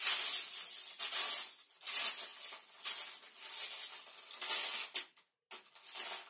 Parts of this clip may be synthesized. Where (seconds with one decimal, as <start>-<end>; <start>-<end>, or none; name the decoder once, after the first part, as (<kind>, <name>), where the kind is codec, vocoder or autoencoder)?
none